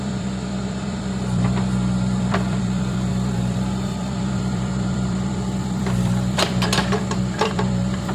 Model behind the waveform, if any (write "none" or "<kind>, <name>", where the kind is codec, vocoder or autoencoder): vocoder, BigVGAN v2